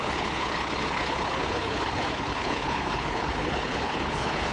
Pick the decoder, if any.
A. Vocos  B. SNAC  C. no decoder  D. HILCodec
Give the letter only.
D